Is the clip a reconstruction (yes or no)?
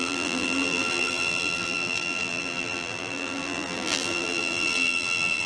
yes